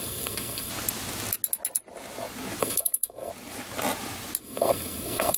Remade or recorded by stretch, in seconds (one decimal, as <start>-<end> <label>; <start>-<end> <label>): 0.0-0.7 remade; 0.7-2.6 recorded; 2.6-3.3 remade; 3.3-4.4 recorded; 4.4-5.4 remade